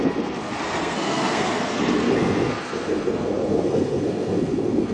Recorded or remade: remade